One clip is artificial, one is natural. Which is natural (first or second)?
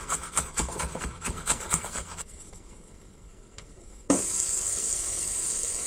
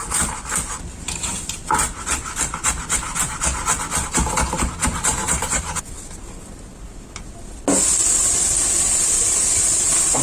second